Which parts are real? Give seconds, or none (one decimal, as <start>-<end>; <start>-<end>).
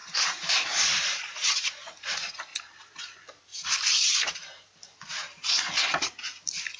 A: 1.6-2.5; 3.1-3.5; 5.1-6.8